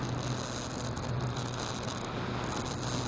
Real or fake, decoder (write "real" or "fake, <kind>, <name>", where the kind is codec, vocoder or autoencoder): real